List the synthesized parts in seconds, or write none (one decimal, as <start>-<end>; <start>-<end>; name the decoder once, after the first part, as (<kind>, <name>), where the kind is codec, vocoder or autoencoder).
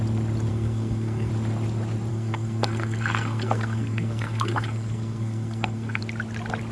0.5-1.3 (codec, SNAC); 2.1-6.0